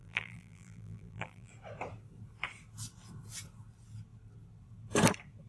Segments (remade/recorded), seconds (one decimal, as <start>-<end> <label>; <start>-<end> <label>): 0.0-1.5 remade; 1.5-5.5 recorded